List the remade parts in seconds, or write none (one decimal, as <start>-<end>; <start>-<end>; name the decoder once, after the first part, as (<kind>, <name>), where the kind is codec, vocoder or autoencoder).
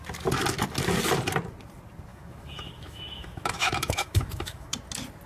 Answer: 2.1-4.7 (autoencoder, DAC-VAE)